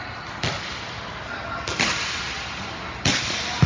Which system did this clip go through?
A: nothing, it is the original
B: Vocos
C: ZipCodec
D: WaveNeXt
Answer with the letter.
A